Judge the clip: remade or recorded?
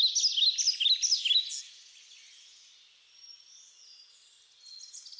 recorded